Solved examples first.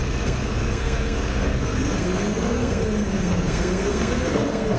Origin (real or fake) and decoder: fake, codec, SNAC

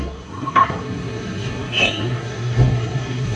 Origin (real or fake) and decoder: fake, codec, SNAC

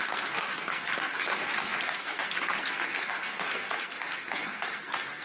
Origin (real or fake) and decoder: fake, codec, SNAC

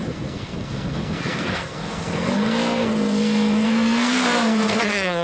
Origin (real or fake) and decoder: fake, codec, SNAC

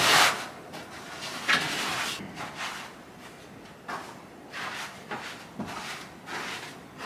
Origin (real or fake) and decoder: real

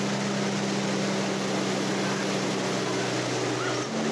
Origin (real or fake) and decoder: real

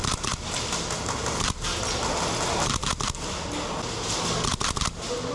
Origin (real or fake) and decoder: real